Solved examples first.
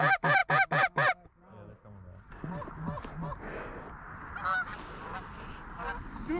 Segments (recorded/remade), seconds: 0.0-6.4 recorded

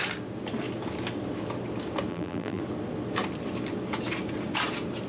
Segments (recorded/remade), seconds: 0.0-2.1 recorded; 2.1-2.6 remade; 2.6-5.1 recorded

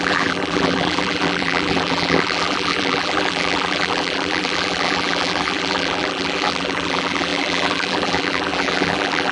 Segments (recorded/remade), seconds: 0.0-9.3 remade

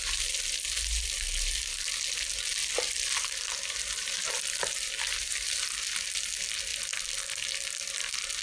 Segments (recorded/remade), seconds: 0.0-2.5 recorded; 2.5-5.6 remade; 5.6-8.4 recorded